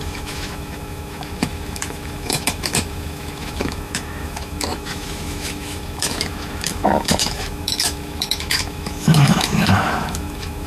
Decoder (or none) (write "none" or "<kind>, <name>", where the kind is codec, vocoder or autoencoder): autoencoder, DAC-VAE